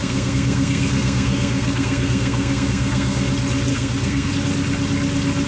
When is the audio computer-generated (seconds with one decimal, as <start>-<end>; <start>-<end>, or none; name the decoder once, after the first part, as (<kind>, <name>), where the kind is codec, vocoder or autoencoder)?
0.0-3.3 (codec, SNAC); 3.7-4.3